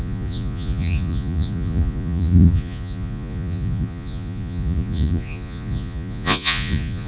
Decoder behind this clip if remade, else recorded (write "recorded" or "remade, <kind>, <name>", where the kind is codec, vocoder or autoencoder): remade, vocoder, Vocos